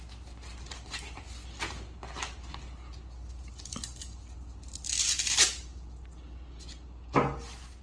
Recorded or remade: recorded